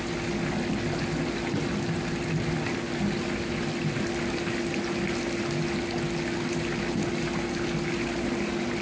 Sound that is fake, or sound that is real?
real